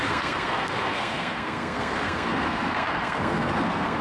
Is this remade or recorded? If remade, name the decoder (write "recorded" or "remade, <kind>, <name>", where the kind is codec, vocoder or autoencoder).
remade, codec, SNAC